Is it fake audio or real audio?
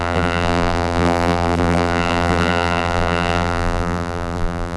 fake